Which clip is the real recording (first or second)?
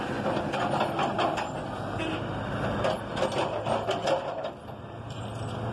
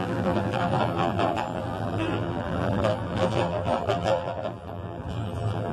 first